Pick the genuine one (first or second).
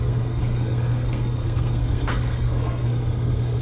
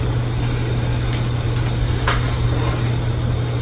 second